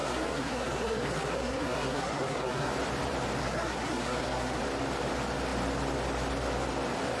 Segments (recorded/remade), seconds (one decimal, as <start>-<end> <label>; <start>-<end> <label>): 0.0-2.7 remade; 2.7-3.4 recorded; 3.4-4.6 remade; 4.6-7.2 recorded